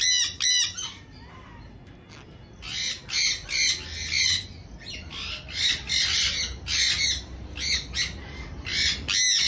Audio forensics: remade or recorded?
recorded